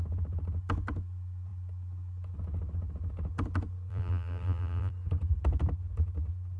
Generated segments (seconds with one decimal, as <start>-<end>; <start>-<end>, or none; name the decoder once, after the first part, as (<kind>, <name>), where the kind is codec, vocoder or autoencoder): 3.9-4.9 (vocoder, BigVGAN v2)